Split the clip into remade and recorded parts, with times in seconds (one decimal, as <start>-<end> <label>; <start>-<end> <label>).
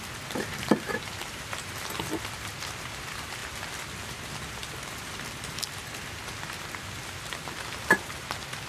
0.0-8.7 recorded